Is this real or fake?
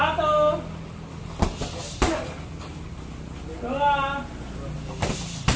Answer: real